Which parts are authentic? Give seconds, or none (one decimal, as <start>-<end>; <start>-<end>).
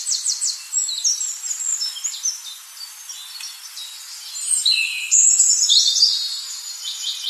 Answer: 0.0-7.3